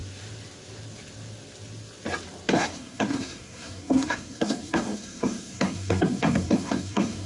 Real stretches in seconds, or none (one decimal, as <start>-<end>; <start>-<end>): 0.0-2.5